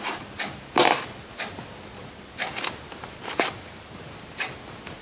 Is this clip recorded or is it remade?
recorded